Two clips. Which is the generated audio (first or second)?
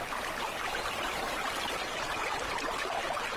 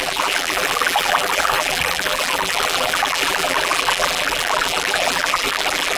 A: second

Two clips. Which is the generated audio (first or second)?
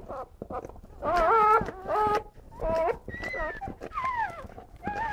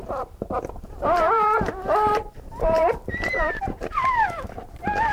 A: second